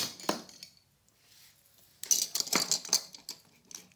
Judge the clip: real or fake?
real